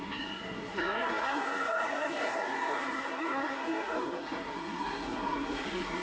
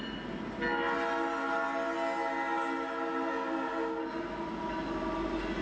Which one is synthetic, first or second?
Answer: first